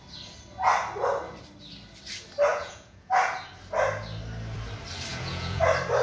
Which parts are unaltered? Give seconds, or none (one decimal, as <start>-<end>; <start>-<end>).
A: 0.0-2.5; 3.1-5.1; 5.6-6.0